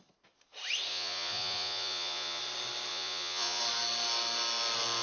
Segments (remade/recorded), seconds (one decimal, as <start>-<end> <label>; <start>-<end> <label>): 0.0-0.9 recorded; 0.9-2.4 remade; 2.4-2.9 recorded; 2.9-3.6 remade; 3.6-5.0 recorded